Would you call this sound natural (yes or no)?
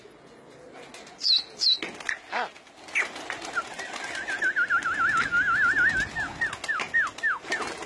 yes